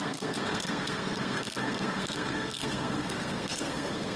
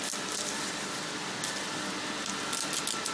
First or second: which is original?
second